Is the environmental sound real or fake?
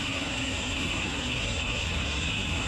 fake